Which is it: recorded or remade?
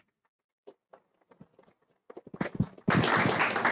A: recorded